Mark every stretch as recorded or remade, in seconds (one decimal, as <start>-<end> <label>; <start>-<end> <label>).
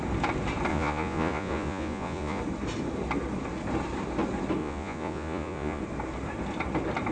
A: 0.0-0.7 recorded; 0.7-2.4 remade; 2.4-4.6 recorded; 4.6-5.8 remade; 5.8-7.1 recorded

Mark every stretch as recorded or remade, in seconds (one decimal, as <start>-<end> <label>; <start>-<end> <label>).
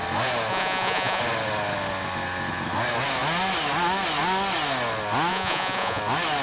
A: 0.0-0.5 recorded; 0.5-1.2 remade; 1.2-5.3 recorded; 5.3-6.0 remade; 6.0-6.4 recorded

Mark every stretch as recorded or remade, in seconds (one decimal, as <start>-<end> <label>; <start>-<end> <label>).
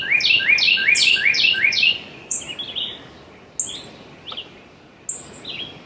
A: 0.0-0.8 recorded; 0.8-2.4 remade; 2.4-5.9 recorded